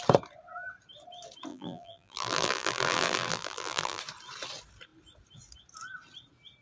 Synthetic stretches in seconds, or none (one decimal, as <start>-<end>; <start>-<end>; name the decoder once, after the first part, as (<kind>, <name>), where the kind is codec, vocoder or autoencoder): 1.5-4.0 (vocoder, BigVGAN v2)